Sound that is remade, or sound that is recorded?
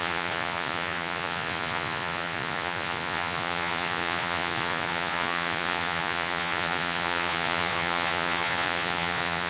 remade